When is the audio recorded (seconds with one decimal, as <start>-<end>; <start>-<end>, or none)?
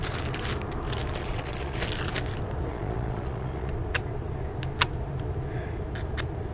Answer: 0.0-1.2; 1.8-2.7; 3.7-6.5